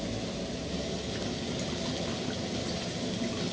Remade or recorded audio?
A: recorded